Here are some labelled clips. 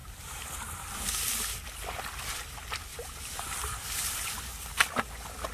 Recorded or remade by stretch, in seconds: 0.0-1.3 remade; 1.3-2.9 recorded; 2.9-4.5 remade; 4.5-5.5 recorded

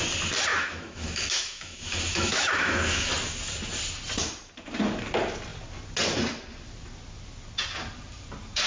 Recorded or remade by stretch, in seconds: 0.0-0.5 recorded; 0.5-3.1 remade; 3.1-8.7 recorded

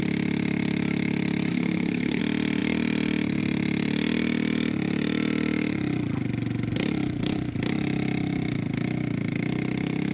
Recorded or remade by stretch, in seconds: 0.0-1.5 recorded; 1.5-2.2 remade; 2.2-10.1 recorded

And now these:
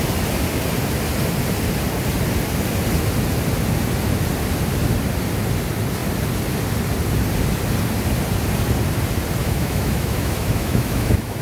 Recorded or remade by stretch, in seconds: 0.0-9.4 recorded; 9.4-11.4 remade